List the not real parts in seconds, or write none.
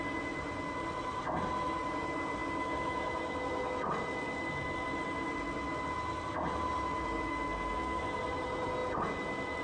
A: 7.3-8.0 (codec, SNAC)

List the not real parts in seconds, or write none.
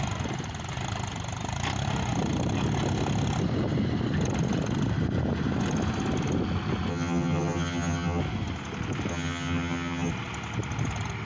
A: 6.9-8.2 (vocoder, HiFi-GAN); 9.1-10.1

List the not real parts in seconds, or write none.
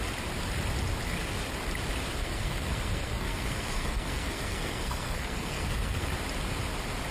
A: 2.2-6.1 (codec, SNAC)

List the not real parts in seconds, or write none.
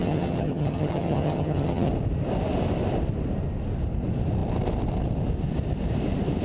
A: 0.0-1.9 (vocoder, HiFi-GAN)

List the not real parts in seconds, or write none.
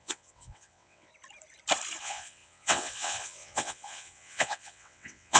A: 0.0-1.1 (vocoder, WaveNeXt); 2.0-5.4